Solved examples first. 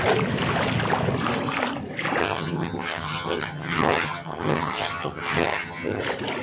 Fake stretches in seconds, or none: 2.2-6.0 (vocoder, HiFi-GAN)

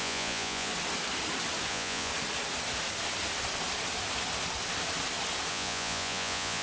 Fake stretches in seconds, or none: 0.0-0.7 (vocoder, Vocos); 1.7-2.1; 5.5-6.6